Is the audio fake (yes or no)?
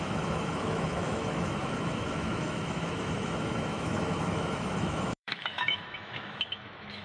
yes